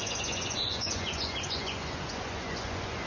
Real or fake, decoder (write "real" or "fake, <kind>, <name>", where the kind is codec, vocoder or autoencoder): fake, vocoder, Vocos